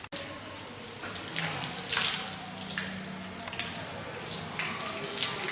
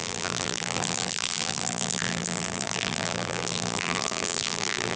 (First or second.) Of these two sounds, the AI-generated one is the second